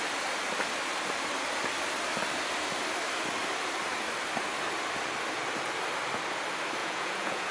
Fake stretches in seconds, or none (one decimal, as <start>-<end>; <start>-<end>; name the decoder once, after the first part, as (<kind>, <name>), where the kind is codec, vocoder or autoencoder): 6.8-7.5 (vocoder, Vocos)